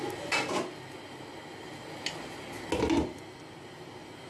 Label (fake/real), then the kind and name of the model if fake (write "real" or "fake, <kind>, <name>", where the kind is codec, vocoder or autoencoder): real